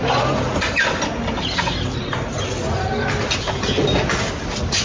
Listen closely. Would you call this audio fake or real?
real